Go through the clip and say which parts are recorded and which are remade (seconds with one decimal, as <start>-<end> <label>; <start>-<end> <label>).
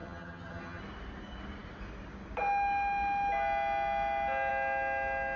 0.0-0.8 remade; 0.8-5.4 recorded